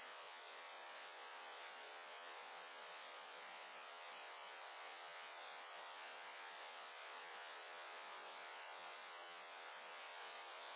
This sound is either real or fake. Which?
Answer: fake